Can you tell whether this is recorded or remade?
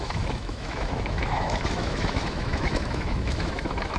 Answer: remade